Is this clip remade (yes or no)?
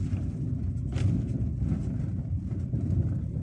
no